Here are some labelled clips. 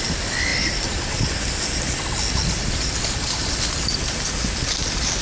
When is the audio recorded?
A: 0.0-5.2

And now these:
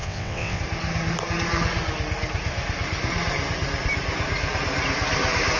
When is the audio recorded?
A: 0.6-5.6

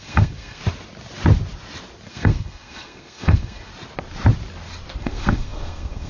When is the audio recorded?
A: 0.6-2.1; 3.7-5.0